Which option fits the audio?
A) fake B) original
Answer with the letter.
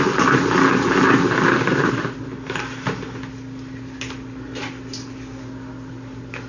B